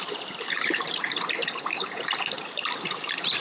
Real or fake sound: fake